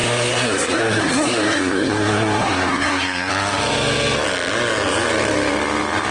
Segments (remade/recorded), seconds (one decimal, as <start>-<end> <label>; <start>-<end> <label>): 0.0-3.3 remade; 3.3-6.1 recorded